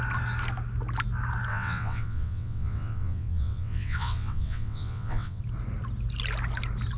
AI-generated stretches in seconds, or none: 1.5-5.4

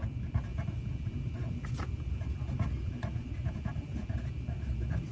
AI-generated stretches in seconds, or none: none

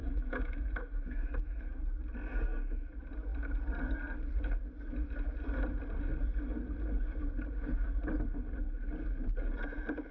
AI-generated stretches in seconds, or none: 0.0-1.8